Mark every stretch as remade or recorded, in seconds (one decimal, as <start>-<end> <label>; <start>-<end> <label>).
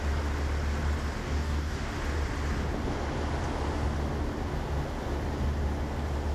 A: 0.0-1.2 recorded; 1.2-1.9 remade; 1.9-6.3 recorded